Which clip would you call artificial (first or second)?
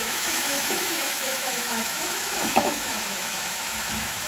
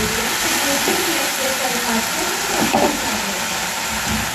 first